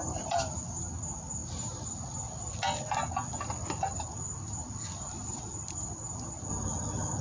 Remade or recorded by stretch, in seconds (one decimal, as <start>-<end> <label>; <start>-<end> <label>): 0.0-7.2 recorded